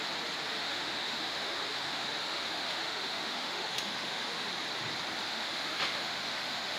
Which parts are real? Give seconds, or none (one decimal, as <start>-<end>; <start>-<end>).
0.0-0.6; 4.5-5.3